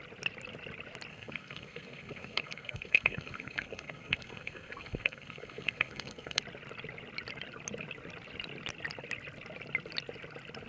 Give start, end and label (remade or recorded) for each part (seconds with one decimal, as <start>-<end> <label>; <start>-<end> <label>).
0.0-1.1 recorded; 1.1-6.4 remade; 6.4-10.7 recorded